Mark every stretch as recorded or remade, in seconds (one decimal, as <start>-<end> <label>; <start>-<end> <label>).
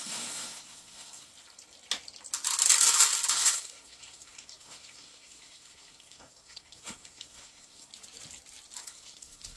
0.0-1.3 remade; 1.3-3.3 recorded; 3.3-7.9 remade; 7.9-8.8 recorded; 8.8-9.6 remade